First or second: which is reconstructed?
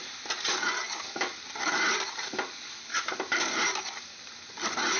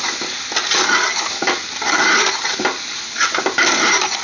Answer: second